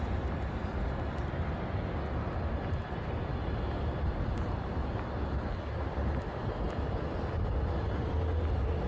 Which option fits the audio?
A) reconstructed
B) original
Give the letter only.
B